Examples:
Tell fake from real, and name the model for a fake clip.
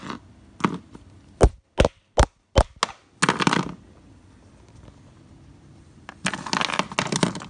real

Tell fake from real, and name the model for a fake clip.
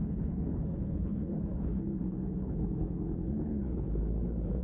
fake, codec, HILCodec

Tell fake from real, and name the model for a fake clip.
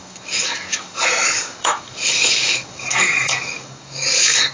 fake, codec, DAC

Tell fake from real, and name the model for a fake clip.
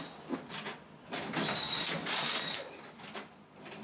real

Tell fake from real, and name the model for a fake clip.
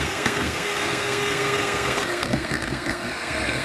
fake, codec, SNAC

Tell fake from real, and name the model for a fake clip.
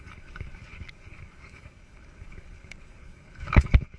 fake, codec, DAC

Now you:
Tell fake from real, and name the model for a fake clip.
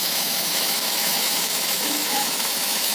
fake, autoencoder, DAC-VAE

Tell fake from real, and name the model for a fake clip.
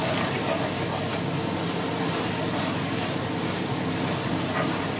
real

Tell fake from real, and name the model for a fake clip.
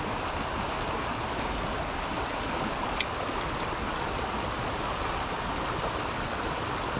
real